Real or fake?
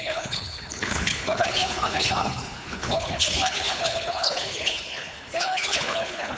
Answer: fake